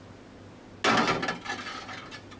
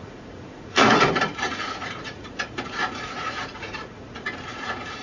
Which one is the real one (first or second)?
first